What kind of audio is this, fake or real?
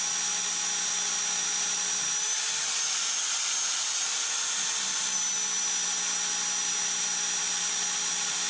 real